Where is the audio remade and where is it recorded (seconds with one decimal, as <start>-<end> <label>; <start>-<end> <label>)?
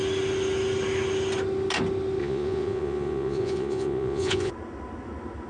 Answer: 0.0-2.2 recorded; 2.2-4.5 remade; 4.5-5.5 recorded